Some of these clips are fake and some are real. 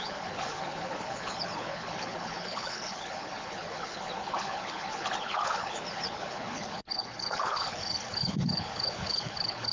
fake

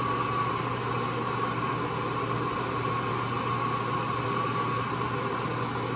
real